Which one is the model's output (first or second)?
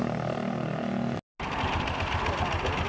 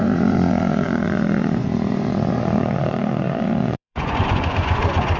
second